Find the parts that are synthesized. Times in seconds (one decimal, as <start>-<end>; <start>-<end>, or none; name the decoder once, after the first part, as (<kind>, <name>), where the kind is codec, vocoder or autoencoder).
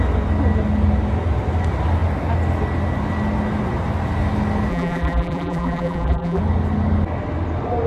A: 4.7-6.4 (vocoder, BigVGAN v2)